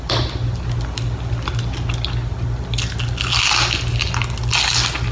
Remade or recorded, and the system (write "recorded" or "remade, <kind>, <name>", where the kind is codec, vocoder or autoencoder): recorded